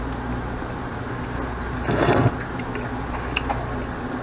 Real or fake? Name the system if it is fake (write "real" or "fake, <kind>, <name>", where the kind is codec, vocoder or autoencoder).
real